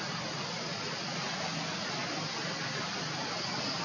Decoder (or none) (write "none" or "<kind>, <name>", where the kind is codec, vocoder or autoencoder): none